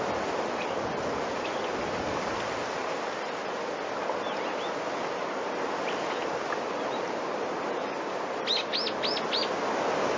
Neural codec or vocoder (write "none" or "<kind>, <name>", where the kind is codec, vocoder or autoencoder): none